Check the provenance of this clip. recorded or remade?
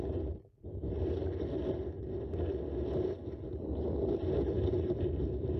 recorded